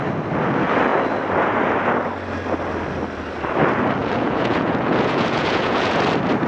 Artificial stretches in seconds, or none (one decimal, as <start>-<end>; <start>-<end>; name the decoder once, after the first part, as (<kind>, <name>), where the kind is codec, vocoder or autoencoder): 4.0-6.0 (vocoder, Vocos)